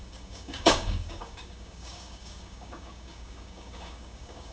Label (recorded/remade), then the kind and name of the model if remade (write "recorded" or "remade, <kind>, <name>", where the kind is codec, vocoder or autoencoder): remade, codec, DAC